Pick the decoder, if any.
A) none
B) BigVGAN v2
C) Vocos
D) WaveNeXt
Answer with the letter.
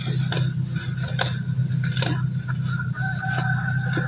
A